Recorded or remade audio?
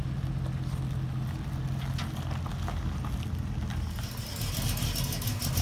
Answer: recorded